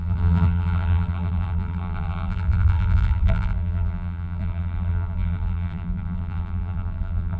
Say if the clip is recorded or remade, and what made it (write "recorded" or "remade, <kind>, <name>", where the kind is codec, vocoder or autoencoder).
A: remade, vocoder, BigVGAN v2